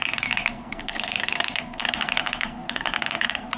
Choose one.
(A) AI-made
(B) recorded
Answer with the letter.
A